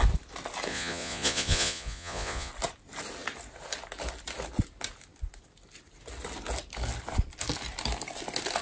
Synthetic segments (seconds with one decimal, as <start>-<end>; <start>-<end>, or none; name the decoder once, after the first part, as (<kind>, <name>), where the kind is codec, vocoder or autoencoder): 0.7-2.5 (vocoder, Vocos)